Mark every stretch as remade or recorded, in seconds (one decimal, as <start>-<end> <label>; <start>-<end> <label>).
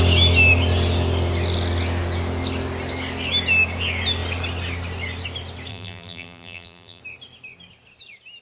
0.0-5.7 recorded; 5.7-7.0 remade; 7.0-8.4 recorded